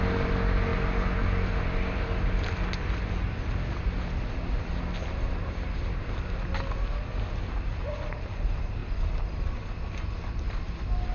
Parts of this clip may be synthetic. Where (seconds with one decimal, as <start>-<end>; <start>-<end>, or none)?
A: none